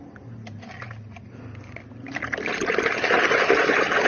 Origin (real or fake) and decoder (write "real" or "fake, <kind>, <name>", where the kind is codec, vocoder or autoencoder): real